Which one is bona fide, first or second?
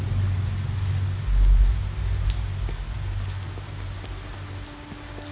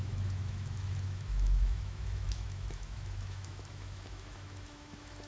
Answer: first